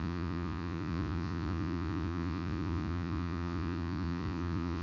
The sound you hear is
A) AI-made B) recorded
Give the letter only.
A